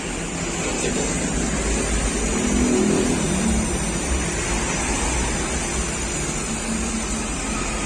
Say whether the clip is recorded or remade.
recorded